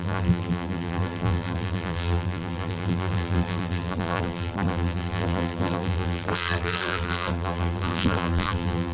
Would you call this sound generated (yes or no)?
yes